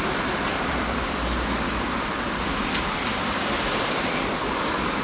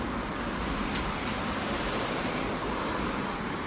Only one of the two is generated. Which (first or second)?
first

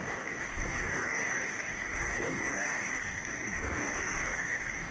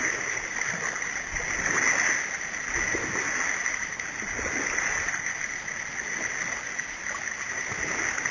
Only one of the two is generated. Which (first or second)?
first